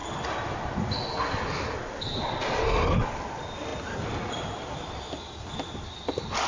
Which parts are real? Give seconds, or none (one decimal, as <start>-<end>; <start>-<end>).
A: 0.0-6.5